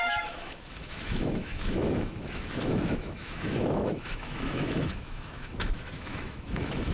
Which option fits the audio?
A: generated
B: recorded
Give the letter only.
A